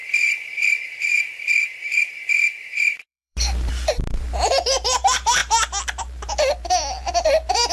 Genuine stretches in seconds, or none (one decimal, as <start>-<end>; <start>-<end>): 5.4-6.0